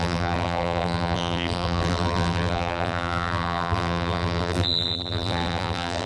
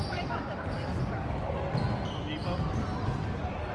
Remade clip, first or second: first